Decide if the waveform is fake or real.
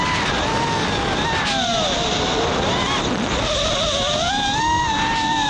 real